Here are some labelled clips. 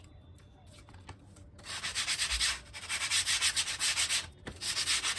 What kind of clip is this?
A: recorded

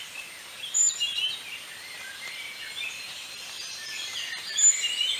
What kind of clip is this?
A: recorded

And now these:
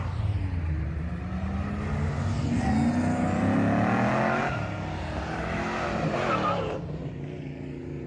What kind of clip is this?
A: recorded